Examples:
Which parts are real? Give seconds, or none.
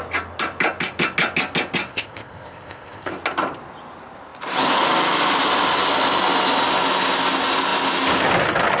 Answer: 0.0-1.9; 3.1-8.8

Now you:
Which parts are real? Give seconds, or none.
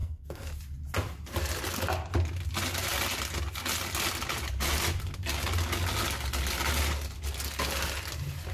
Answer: 0.5-8.5